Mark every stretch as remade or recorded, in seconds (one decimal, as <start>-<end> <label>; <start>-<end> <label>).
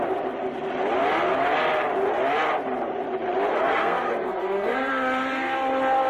0.0-3.5 recorded; 3.5-4.9 remade; 4.9-6.1 recorded